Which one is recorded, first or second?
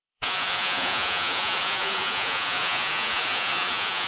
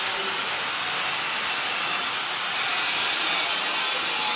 second